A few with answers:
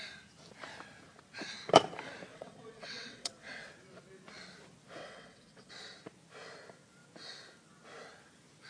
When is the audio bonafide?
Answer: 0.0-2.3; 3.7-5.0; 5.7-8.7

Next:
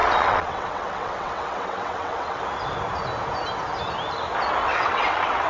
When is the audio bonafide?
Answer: 2.4-4.6

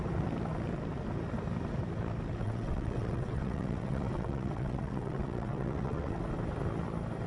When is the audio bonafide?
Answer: 0.0-2.4; 6.2-7.3